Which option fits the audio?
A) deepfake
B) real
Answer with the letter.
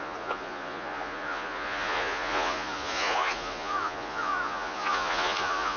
A